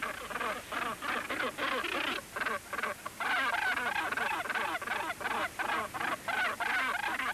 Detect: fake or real real